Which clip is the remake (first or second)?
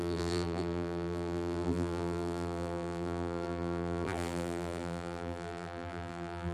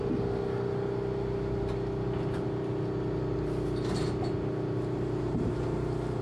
first